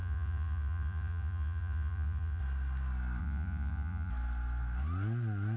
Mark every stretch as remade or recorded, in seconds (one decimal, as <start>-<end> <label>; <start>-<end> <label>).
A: 0.0-2.4 remade; 2.4-3.2 recorded; 3.2-4.1 remade; 4.1-5.6 recorded

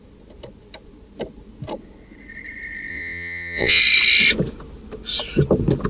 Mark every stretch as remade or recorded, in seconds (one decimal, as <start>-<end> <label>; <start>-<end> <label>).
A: 0.0-2.9 recorded; 2.9-3.8 remade; 3.8-5.9 recorded

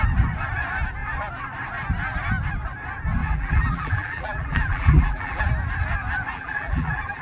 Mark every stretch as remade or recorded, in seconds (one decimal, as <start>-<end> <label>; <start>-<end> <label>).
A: 0.0-3.2 recorded; 3.2-5.4 remade; 5.4-6.3 recorded; 6.3-7.2 remade

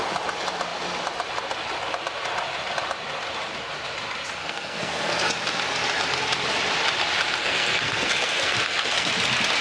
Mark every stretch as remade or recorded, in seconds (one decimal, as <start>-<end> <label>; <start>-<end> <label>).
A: 0.0-4.4 recorded; 4.4-5.3 remade; 5.3-7.4 recorded; 7.4-9.1 remade; 9.1-9.6 recorded

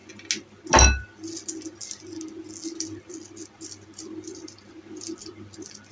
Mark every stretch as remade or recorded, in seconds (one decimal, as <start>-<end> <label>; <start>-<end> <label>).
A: 0.0-5.9 recorded

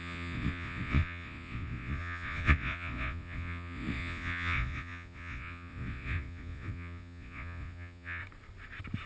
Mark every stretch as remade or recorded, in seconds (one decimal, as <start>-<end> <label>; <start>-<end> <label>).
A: 0.0-8.2 remade; 8.2-9.1 recorded